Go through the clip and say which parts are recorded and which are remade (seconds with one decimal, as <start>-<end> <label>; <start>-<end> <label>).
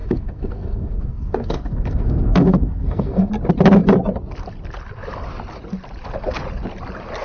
0.0-3.3 remade; 3.3-7.2 recorded